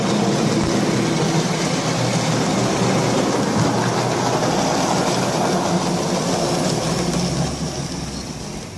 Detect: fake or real real